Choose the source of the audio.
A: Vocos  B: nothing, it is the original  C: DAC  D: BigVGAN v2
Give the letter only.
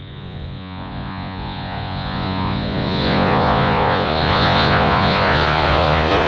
A